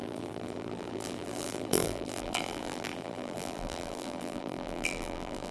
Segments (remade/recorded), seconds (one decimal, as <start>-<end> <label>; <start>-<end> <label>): 0.0-5.5 remade